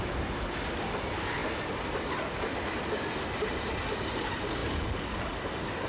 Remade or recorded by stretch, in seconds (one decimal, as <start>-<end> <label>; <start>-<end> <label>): 0.0-5.9 recorded